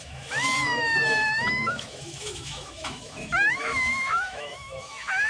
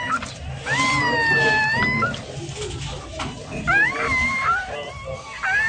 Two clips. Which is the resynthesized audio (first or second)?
first